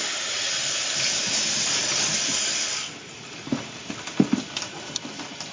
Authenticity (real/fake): fake